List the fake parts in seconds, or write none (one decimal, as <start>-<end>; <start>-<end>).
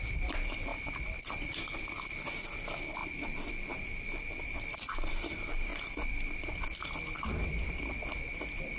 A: 0.7-1.2